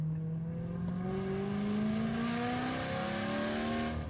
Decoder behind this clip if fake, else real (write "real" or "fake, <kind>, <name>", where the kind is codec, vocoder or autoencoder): real